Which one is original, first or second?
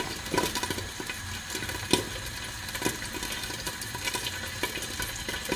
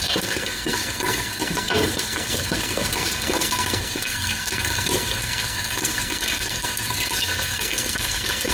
first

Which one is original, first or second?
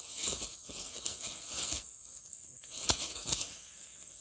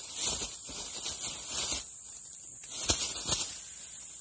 second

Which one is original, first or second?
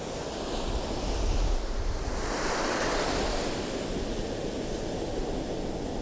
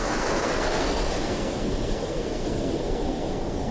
first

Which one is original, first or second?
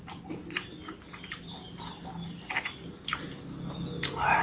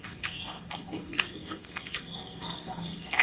first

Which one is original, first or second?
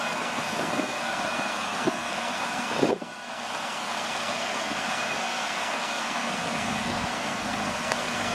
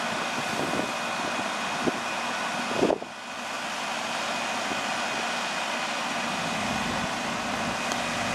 second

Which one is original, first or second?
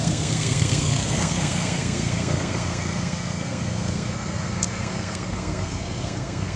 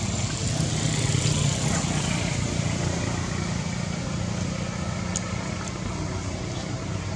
second